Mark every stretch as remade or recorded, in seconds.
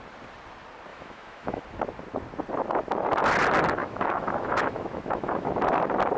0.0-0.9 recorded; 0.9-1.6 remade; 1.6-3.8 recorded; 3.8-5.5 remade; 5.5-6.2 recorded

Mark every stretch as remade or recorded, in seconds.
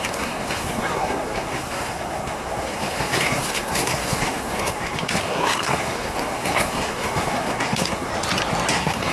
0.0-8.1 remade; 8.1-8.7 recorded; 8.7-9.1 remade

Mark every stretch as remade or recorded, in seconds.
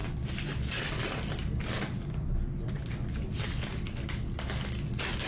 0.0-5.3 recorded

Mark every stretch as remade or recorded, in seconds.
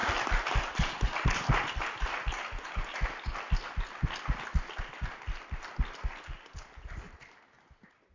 0.0-8.1 recorded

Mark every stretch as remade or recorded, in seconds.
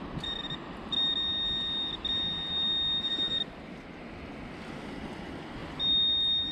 0.0-6.5 recorded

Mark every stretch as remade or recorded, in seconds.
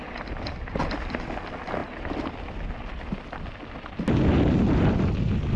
0.0-5.6 recorded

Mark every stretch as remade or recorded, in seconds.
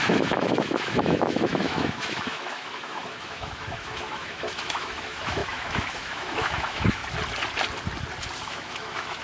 0.0-7.0 remade; 7.0-8.5 recorded; 8.5-9.2 remade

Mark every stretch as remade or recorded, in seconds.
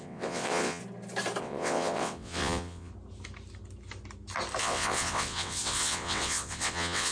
0.0-0.8 remade; 0.8-1.4 recorded; 1.4-2.9 remade; 2.9-4.6 recorded; 4.6-7.1 remade